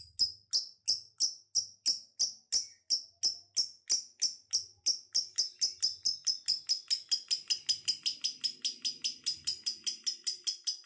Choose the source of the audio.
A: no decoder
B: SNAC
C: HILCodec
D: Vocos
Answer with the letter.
A